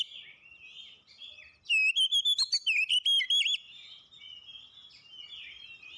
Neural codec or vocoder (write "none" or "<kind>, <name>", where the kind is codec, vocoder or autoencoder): none